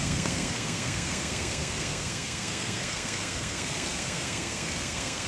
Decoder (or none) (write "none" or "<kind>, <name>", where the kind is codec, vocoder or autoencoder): codec, SNAC